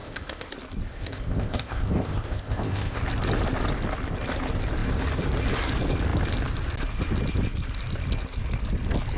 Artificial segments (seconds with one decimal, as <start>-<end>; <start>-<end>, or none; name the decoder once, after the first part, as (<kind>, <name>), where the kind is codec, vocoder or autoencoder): 0.0-0.5 (codec, ZipCodec); 0.9-3.0